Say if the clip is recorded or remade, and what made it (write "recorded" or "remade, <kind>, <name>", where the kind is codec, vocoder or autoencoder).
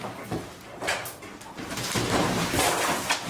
recorded